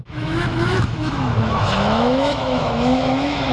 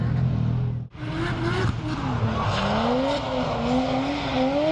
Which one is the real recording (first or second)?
second